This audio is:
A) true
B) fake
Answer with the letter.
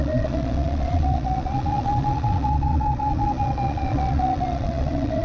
B